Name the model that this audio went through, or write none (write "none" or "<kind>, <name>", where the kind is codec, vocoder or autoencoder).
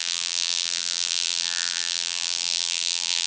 vocoder, BigVGAN v2